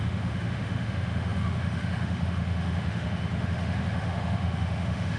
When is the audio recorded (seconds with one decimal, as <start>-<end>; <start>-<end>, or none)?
none